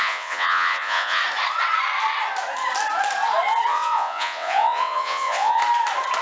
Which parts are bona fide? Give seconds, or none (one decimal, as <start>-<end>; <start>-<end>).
1.2-3.7; 5.6-6.2